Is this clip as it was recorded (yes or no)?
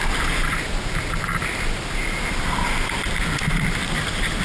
yes